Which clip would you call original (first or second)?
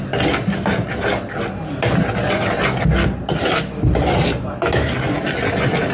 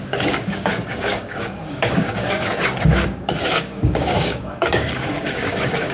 first